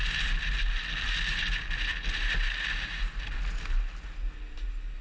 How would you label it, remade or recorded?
recorded